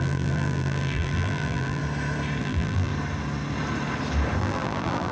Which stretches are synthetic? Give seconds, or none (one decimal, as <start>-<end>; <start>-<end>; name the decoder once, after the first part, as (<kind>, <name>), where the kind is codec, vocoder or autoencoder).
0.0-1.8 (vocoder, BigVGAN v2); 2.4-2.9; 4.4-5.1